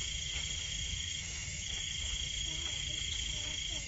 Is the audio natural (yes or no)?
no